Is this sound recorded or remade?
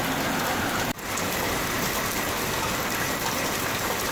recorded